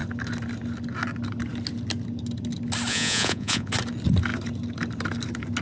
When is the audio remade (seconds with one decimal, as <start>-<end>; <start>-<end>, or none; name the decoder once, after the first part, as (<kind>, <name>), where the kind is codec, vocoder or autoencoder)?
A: 2.9-3.7 (vocoder, Vocos)